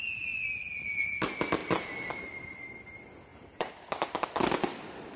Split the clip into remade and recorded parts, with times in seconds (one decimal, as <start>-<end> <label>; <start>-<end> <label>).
0.0-1.6 recorded; 1.6-2.1 remade; 2.1-3.3 recorded; 3.3-3.9 remade; 3.9-5.2 recorded